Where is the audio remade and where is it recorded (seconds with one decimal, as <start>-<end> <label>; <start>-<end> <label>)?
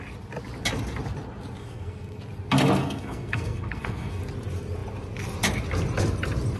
0.0-1.6 recorded; 1.6-2.2 remade; 2.2-2.8 recorded; 2.8-4.2 remade; 4.2-6.6 recorded